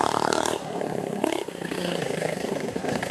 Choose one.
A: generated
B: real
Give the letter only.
A